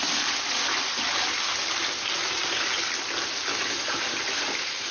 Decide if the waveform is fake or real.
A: real